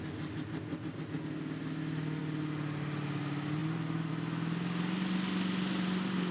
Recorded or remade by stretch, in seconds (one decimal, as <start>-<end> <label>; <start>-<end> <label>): 0.0-6.3 recorded

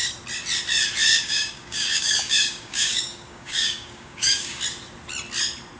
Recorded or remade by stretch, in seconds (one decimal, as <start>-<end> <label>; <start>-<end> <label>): 0.0-1.1 recorded; 1.1-4.6 remade; 4.6-5.8 recorded